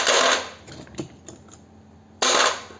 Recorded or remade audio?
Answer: recorded